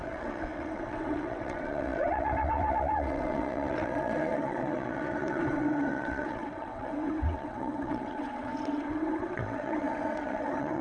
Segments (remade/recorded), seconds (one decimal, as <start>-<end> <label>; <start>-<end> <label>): 0.0-10.8 remade